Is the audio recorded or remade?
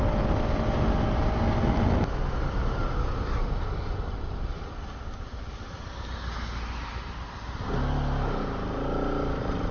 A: recorded